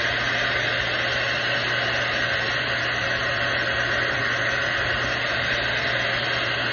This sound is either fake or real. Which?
real